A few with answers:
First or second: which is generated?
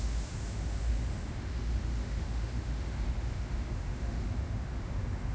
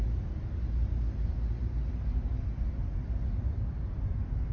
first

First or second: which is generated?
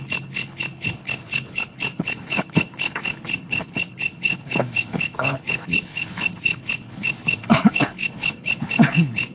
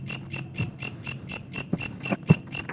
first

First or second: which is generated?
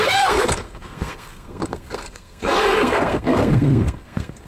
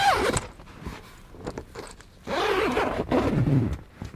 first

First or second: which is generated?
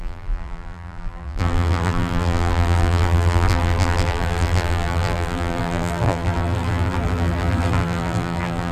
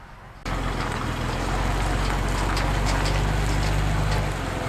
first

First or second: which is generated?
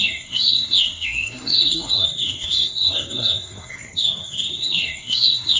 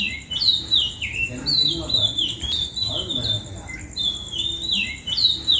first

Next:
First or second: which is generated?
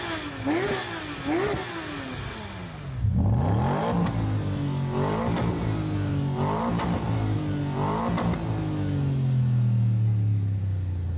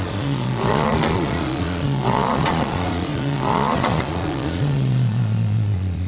second